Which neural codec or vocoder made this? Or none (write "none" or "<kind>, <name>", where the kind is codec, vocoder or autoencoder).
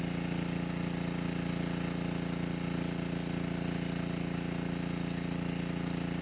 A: none